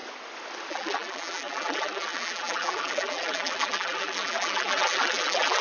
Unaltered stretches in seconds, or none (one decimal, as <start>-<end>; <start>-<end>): 0.0-0.7